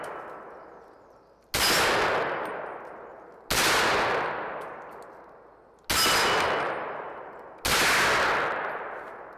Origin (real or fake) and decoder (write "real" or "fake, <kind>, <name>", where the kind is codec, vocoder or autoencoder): real